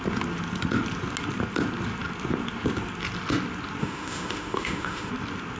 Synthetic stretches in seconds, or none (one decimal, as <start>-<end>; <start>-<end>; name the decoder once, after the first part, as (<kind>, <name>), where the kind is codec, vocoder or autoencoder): 3.8-5.1 (autoencoder, DAC-VAE)